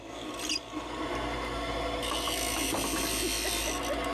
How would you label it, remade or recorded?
recorded